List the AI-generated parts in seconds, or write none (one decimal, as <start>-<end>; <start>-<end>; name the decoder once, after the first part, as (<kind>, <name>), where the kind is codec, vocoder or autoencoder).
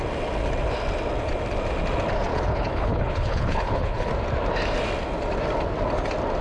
2.3-4.1 (codec, HILCodec)